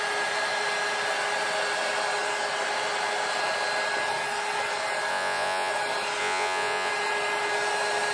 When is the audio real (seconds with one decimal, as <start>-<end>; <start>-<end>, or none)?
0.0-5.1; 5.7-6.2; 6.9-8.1